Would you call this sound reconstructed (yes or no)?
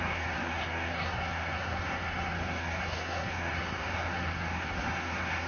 yes